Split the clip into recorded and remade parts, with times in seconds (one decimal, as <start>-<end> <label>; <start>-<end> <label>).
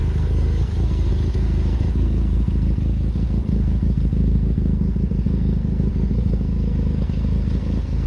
0.0-8.1 remade